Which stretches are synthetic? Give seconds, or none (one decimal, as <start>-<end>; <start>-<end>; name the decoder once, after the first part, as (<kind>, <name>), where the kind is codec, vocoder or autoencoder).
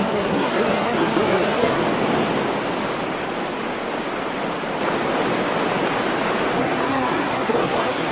0.0-1.8 (codec, SNAC); 6.6-8.1